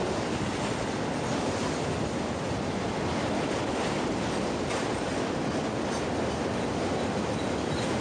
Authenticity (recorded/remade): recorded